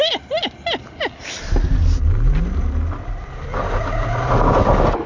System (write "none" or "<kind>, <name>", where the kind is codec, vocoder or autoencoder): none